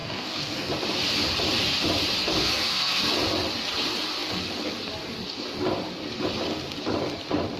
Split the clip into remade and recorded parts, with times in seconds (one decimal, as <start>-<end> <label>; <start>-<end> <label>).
0.0-0.7 remade; 0.7-2.4 recorded; 2.4-3.0 remade; 3.0-7.6 recorded